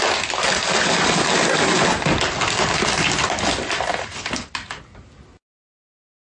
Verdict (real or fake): real